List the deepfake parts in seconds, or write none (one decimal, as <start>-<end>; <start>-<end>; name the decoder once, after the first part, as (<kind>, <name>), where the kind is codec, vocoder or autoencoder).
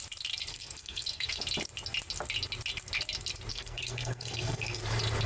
0.5-1.4 (codec, SNAC); 3.5-4.8